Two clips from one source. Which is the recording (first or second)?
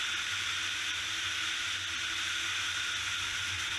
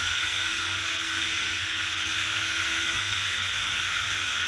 first